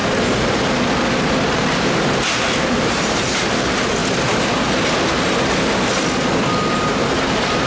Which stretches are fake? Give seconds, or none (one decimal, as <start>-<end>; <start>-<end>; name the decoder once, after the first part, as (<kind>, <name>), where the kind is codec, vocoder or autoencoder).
1.5-4.0 (vocoder, BigVGAN v2); 6.7-7.7